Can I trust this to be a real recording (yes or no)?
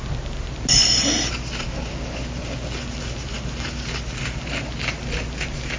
yes